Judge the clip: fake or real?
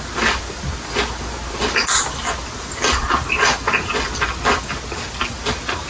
real